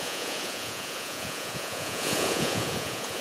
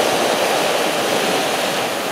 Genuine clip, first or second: second